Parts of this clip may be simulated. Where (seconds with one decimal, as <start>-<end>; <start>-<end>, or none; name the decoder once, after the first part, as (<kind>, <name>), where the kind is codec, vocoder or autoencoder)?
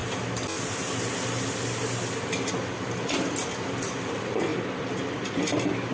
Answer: none